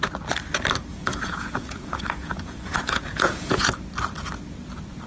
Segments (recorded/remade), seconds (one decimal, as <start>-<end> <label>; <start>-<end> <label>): 0.0-0.9 recorded; 0.9-3.6 remade; 3.6-5.1 recorded